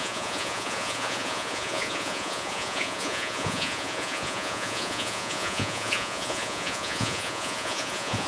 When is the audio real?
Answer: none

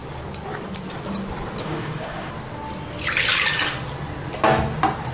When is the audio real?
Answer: 0.0-1.6; 2.3-5.1

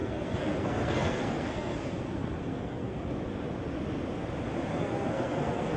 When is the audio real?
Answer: 3.1-4.7